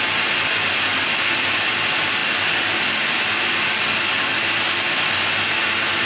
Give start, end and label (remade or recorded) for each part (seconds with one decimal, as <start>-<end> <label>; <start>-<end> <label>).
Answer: 0.0-6.1 recorded